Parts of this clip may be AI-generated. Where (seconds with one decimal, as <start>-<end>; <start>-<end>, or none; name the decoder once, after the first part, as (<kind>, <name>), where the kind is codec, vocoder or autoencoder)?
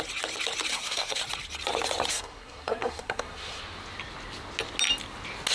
0.7-1.2 (codec, SNAC); 2.1-3.6